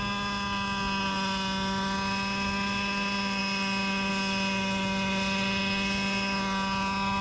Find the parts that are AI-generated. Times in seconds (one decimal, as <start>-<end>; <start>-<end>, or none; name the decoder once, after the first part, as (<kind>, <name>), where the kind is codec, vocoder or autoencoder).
none